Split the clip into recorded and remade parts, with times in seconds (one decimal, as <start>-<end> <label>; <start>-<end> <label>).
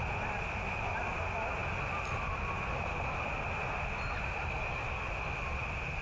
0.0-6.0 recorded